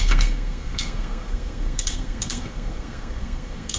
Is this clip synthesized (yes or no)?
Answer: yes